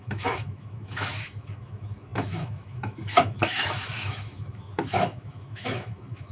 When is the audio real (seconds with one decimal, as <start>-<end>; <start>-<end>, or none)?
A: none